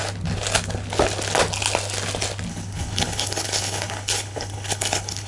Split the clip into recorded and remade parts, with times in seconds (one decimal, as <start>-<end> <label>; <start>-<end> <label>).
0.0-2.5 recorded; 2.5-5.3 remade